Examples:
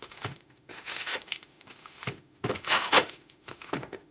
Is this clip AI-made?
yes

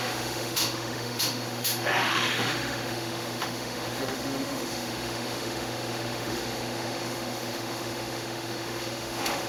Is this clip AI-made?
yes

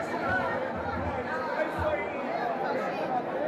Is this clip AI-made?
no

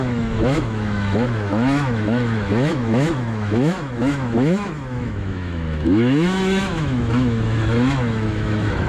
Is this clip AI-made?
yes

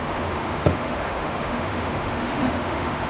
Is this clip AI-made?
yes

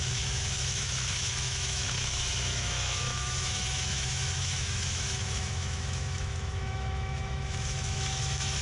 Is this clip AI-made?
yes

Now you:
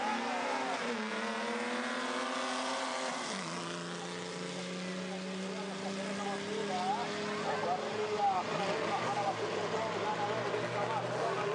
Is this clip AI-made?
no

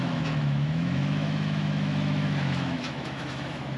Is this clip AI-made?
yes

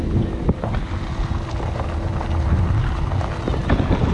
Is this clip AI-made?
no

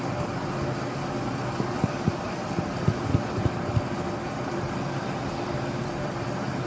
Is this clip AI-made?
no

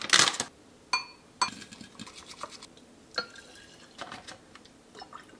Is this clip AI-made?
no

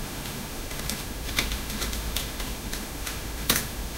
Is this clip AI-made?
yes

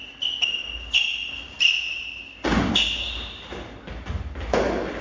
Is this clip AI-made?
no